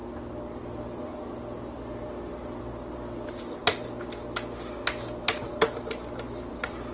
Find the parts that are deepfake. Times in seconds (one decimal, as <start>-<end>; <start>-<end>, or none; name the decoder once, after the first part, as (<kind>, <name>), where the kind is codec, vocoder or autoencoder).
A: none